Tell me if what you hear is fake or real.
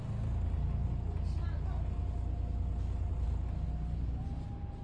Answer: real